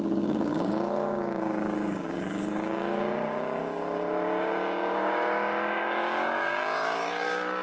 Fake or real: fake